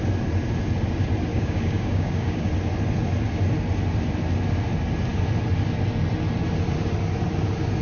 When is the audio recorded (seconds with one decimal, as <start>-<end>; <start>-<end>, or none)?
0.0-1.3; 2.5-7.8